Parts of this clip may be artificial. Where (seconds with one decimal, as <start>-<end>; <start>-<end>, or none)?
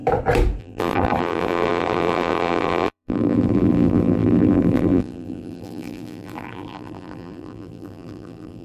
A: 0.6-8.6